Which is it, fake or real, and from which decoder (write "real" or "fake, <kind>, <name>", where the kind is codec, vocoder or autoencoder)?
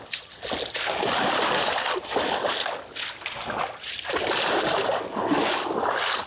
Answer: real